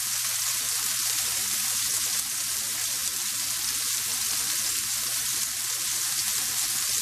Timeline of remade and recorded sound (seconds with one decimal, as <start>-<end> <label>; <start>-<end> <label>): 0.0-7.0 recorded